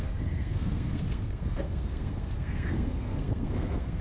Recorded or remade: remade